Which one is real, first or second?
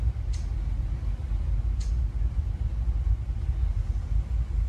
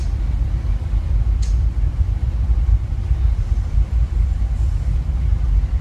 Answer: first